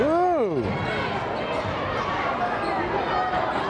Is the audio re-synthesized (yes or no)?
no